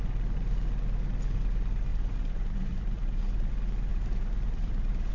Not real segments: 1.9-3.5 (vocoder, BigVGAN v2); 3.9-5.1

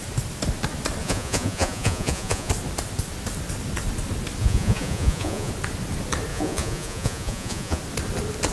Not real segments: 1.0-2.5 (vocoder, Vocos); 4.4-5.5; 6.3-7.8

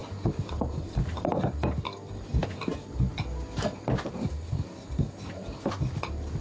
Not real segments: none